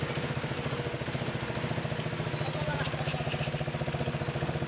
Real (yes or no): yes